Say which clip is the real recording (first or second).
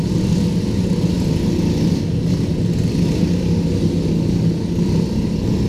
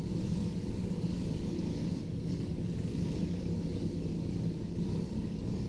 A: first